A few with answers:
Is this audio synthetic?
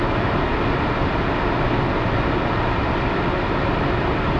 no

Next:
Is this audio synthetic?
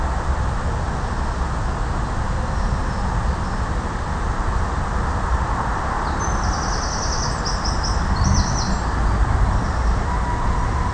no